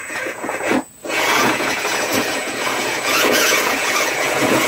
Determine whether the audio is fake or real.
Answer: fake